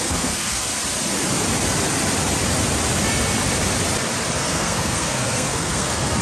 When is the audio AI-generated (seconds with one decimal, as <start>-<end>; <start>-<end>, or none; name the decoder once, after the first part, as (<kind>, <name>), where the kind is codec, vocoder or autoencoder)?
0.0-0.7 (codec, SNAC); 4.4-6.2